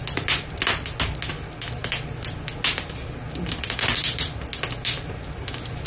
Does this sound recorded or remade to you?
recorded